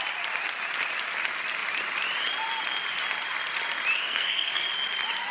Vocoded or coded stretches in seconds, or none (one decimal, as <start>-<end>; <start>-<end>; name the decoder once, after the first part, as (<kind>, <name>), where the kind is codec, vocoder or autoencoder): 4.0-4.7 (codec, SNAC)